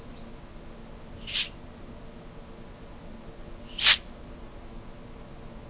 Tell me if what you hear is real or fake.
real